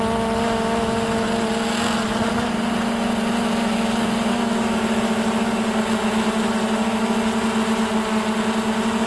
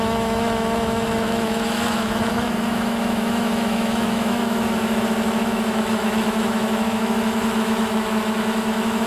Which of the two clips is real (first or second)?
first